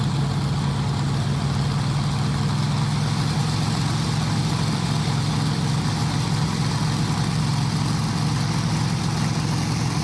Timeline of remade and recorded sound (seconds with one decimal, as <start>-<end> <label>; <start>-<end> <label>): 0.0-10.0 recorded